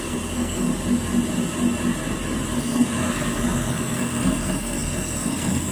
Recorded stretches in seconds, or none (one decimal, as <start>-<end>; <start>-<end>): 0.7-2.6